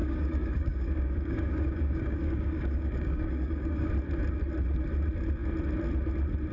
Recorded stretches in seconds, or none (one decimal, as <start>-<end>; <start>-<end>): 3.9-6.5